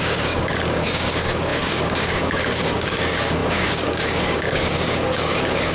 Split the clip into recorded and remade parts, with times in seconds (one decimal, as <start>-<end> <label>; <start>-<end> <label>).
0.0-5.7 remade